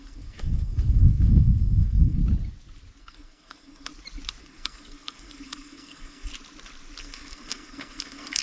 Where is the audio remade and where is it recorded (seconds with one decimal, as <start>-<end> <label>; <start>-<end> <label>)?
0.0-2.2 remade; 2.2-3.0 recorded; 3.0-3.9 remade; 3.9-4.4 recorded; 4.4-6.3 remade; 6.3-7.0 recorded; 7.0-8.4 remade